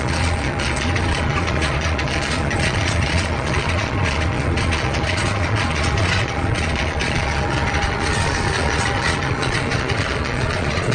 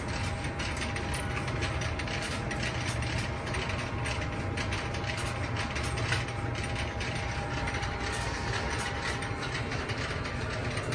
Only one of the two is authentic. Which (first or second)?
second